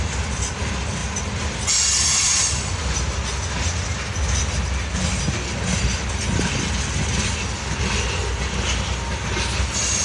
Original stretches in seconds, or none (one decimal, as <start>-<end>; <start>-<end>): 0.0-10.0